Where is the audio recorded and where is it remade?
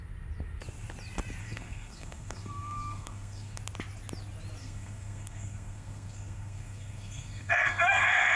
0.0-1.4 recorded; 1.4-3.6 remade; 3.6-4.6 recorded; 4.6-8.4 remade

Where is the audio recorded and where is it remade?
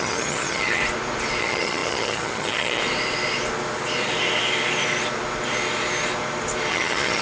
0.0-0.8 remade; 0.8-1.4 recorded; 1.4-2.8 remade; 2.8-6.7 recorded; 6.7-7.2 remade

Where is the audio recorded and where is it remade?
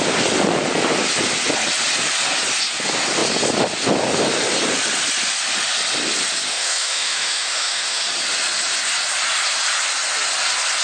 0.0-6.5 recorded; 6.5-8.0 remade; 8.0-10.8 recorded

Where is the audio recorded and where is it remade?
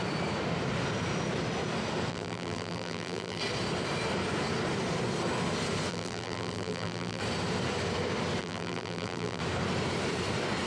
0.0-2.1 recorded; 2.1-3.4 remade; 3.4-5.9 recorded; 5.9-7.2 remade; 7.2-8.4 recorded; 8.4-9.4 remade; 9.4-10.7 recorded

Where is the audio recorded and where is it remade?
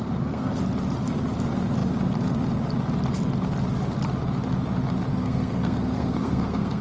0.0-0.5 remade; 0.5-5.1 recorded; 5.1-6.8 remade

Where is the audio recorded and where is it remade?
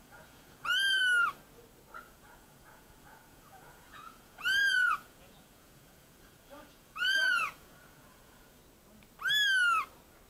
0.0-1.0 remade; 1.0-2.0 recorded; 2.0-8.6 remade; 8.6-10.3 recorded